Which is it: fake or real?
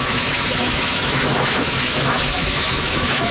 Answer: fake